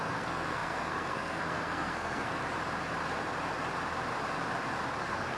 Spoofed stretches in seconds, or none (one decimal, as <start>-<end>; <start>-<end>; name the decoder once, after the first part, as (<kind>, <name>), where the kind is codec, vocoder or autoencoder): 0.0-2.4 (codec, SNAC); 5.0-5.4